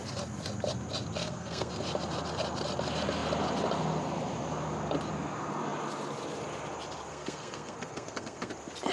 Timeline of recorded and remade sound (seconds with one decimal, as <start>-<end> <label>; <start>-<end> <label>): 0.0-1.2 recorded; 1.2-1.7 remade; 1.7-7.1 recorded; 7.1-8.5 remade; 8.5-8.9 recorded